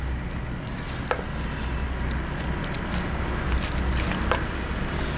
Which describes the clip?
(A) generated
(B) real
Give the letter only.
B